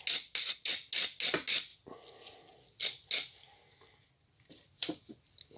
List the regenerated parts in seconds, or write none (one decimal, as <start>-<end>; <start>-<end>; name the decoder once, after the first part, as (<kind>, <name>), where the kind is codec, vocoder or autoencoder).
none